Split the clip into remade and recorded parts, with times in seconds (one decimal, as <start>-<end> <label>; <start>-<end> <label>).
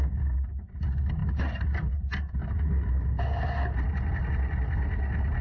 0.0-5.4 recorded